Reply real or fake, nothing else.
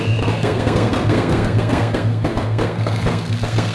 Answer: fake